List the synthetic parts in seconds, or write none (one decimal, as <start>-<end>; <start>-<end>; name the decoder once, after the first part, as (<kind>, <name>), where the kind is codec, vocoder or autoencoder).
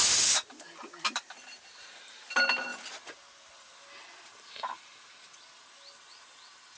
none